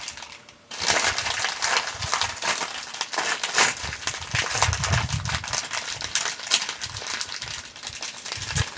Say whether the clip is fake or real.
real